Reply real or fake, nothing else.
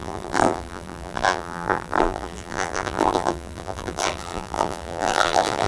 fake